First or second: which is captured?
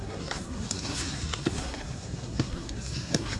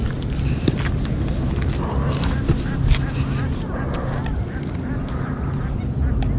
second